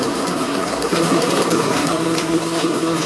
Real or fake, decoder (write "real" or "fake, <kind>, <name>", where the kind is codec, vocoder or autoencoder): fake, codec, SNAC